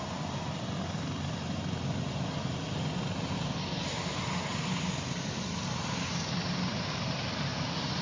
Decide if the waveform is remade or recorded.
recorded